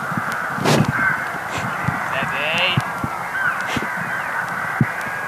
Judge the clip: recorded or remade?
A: recorded